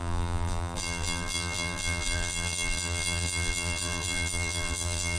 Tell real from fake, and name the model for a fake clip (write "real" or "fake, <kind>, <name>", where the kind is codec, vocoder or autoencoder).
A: fake, vocoder, BigVGAN v2